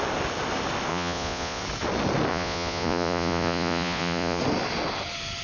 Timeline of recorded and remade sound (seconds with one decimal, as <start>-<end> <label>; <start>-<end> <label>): 0.0-0.9 recorded; 0.9-1.6 remade; 1.6-2.3 recorded; 2.3-4.4 remade; 4.4-5.4 recorded